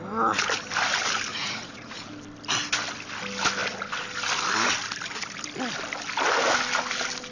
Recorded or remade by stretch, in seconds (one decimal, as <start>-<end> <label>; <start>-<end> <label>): 0.0-1.3 recorded; 1.3-2.0 remade; 2.0-7.3 recorded